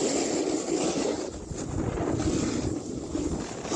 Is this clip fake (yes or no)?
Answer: no